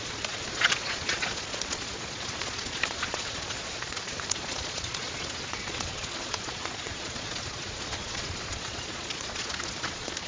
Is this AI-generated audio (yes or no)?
yes